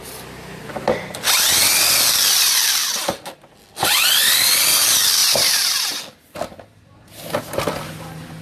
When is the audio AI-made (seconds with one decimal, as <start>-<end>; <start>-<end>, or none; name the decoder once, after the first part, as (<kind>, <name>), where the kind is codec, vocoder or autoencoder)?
5.2-6.0 (vocoder, BigVGAN v2)